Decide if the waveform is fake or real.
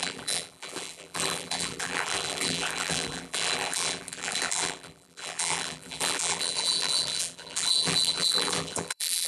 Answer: fake